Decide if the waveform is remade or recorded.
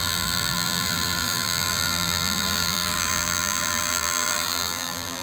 remade